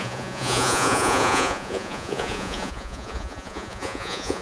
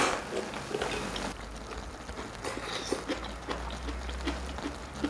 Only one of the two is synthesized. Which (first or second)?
first